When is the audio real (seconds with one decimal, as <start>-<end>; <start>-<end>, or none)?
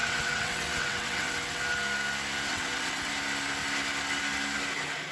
1.6-2.5; 3.1-5.1